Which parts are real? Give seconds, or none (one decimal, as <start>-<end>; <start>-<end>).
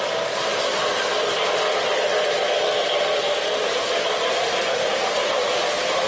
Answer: 0.0-4.9